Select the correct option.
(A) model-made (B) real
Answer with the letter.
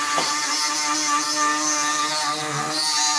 B